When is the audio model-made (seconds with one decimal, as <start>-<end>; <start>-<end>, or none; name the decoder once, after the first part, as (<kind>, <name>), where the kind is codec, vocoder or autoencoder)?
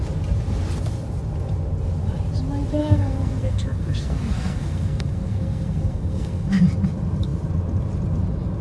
2.8-6.6 (codec, SNAC)